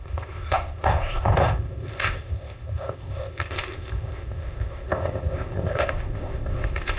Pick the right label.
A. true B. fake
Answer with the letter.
B